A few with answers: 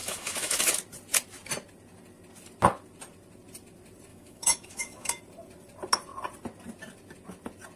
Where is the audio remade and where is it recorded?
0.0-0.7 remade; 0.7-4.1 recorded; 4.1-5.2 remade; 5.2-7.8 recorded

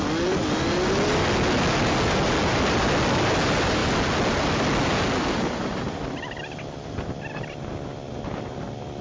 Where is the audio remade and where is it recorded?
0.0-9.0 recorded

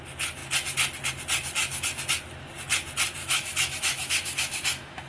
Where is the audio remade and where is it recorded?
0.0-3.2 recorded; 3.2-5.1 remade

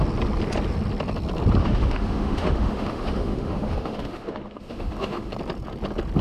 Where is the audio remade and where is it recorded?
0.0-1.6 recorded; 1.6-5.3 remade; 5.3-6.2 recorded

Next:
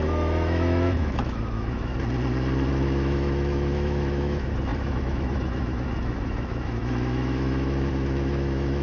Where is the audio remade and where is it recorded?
0.0-1.9 remade; 1.9-2.7 recorded; 2.7-8.8 remade

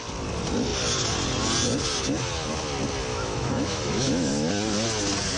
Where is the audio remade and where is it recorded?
0.0-3.1 recorded; 3.1-4.5 remade; 4.5-5.4 recorded